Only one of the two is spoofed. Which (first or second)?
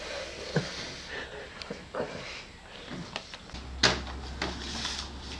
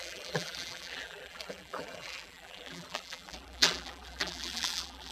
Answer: second